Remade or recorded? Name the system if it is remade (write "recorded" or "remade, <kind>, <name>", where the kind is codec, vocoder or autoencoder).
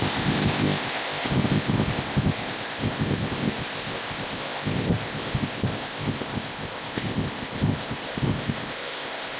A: remade, codec, ZipCodec